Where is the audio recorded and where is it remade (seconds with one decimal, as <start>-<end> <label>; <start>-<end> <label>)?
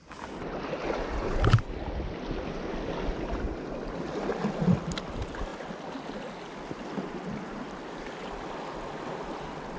0.0-9.8 recorded